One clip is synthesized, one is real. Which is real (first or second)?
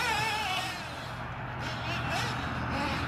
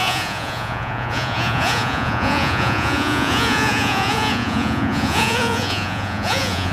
first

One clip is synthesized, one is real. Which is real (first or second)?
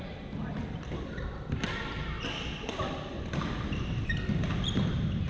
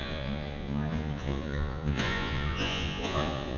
first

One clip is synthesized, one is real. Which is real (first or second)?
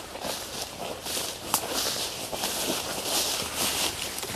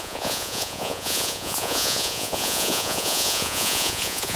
first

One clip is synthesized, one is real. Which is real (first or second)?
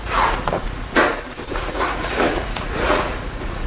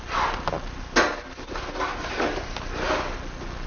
second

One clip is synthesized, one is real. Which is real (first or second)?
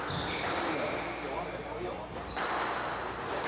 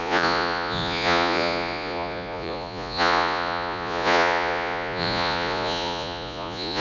first